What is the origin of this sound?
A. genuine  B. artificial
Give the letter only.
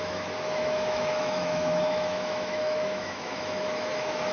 B